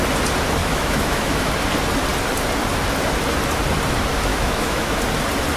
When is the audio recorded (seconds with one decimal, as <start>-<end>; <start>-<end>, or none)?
0.0-0.6; 1.5-4.3; 5.0-5.6

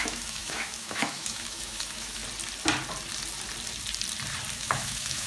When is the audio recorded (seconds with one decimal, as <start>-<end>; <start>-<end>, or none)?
2.2-4.5

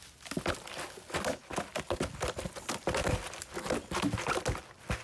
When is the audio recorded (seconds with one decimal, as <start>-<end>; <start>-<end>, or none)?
0.0-5.0

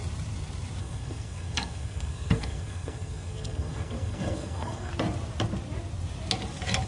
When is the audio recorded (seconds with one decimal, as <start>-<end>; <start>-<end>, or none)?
0.0-0.8; 4.9-6.9

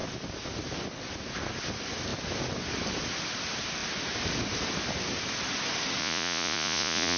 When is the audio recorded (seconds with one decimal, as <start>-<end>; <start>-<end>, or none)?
0.0-6.0

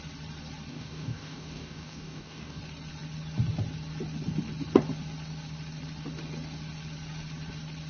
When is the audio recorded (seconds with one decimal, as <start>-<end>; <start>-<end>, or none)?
0.0-0.7; 2.6-7.9

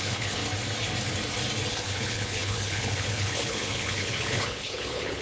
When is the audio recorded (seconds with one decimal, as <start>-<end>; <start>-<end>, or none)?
0.4-1.7